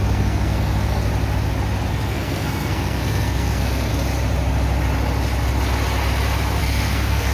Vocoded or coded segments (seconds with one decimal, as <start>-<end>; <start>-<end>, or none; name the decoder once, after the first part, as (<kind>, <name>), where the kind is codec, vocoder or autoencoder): 0.0-1.1 (codec, SNAC); 1.9-3.9; 6.6-7.3